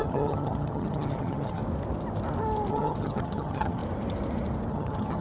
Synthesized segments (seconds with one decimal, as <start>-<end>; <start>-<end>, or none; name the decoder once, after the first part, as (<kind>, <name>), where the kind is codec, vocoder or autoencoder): 0.0-1.6 (vocoder, HiFi-GAN); 2.7-3.8; 4.7-5.2